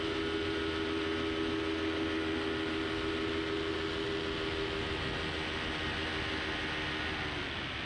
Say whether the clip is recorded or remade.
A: recorded